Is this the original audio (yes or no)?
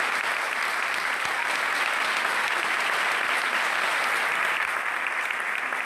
yes